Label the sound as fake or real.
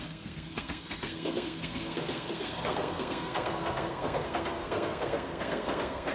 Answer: fake